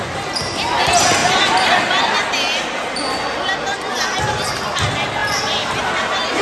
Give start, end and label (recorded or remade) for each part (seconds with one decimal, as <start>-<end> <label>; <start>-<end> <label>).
0.0-6.4 recorded